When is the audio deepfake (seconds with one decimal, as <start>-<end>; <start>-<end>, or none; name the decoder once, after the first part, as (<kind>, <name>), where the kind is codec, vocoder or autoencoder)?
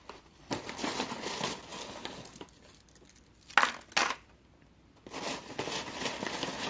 none